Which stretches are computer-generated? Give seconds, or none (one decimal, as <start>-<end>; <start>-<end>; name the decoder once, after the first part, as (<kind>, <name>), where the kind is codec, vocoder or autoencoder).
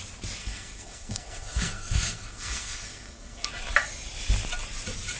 0.4-3.5 (codec, SNAC)